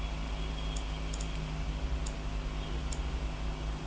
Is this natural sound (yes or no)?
yes